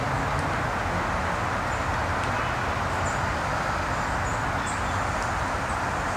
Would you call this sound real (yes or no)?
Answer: yes